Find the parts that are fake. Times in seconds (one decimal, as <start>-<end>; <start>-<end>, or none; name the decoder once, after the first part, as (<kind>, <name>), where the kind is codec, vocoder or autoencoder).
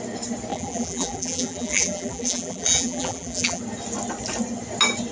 0.5-3.6 (vocoder, BigVGAN v2)